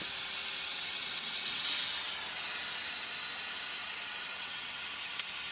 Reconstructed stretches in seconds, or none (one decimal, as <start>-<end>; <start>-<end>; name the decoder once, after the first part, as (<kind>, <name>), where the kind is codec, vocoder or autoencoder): 0.7-1.9 (vocoder, WaveNeXt); 3.8-4.7

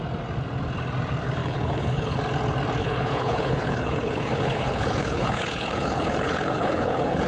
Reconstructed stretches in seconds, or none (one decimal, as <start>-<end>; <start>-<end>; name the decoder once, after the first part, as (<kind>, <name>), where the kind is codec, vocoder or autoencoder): 1.4-2.2 (codec, HILCodec); 2.8-7.3

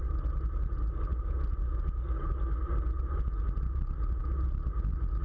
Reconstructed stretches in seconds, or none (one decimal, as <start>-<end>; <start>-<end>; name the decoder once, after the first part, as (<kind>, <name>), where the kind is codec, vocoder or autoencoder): none

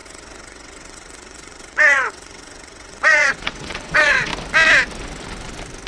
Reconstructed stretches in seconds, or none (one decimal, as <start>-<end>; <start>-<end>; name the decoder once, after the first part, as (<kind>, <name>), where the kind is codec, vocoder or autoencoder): 0.0-4.3 (vocoder, WaveNeXt)

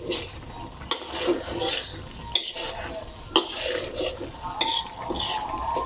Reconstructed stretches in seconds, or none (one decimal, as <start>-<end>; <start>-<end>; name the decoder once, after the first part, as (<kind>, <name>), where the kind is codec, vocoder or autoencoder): none

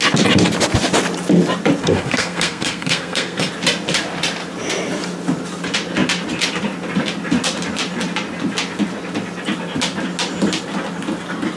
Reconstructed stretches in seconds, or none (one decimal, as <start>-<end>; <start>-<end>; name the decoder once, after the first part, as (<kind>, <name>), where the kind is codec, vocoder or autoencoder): 1.8-3.5 (codec, SNAC)

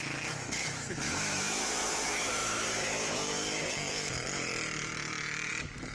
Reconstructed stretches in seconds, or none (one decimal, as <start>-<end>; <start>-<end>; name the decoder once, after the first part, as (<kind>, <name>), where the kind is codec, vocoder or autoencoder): 0.0-4.5 (autoencoder, DAC-VAE); 5.5-5.9